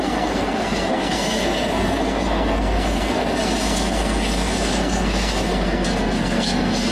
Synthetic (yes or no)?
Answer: yes